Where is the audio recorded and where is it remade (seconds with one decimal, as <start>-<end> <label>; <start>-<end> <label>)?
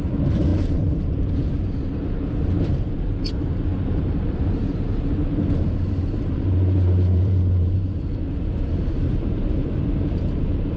0.0-10.8 remade